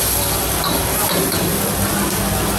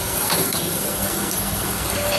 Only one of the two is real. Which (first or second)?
first